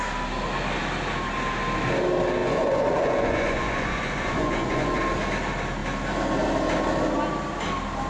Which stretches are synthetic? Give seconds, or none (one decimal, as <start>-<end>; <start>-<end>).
2.4-5.0